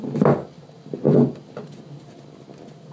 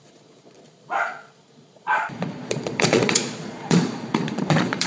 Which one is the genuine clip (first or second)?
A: first